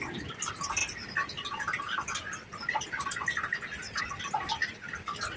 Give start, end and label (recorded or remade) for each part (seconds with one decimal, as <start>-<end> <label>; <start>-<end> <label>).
0.0-4.6 recorded; 4.6-5.4 remade